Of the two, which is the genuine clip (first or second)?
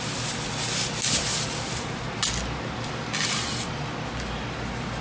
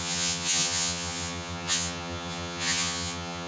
first